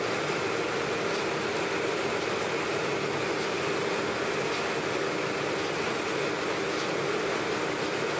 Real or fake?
real